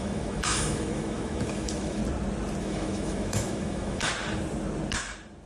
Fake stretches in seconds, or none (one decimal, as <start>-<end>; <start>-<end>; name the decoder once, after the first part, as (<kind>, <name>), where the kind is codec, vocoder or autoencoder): 0.0-2.0 (autoencoder, DAC-VAE); 2.6-4.1